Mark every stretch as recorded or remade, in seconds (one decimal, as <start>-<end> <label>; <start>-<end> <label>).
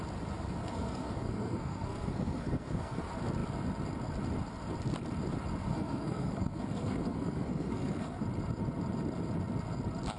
0.0-0.6 recorded; 0.6-3.0 remade; 3.0-5.7 recorded; 5.7-8.2 remade; 8.2-10.2 recorded